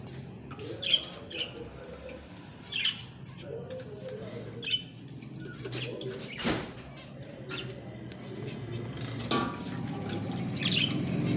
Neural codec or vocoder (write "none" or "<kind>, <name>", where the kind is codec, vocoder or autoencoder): none